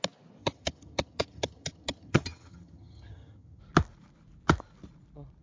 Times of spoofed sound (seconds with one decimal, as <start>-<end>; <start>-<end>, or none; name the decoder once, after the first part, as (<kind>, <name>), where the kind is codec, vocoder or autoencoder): 0.4-3.6 (vocoder, HiFi-GAN)